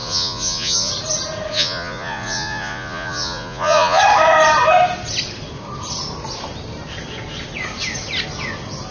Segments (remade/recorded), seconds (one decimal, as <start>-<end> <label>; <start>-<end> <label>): 0.0-0.9 remade; 0.9-1.5 recorded; 1.5-4.0 remade; 4.0-8.9 recorded